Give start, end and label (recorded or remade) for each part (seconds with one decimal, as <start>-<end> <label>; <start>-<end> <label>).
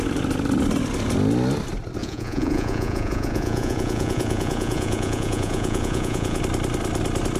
0.0-2.0 recorded; 2.0-6.4 remade; 6.4-7.4 recorded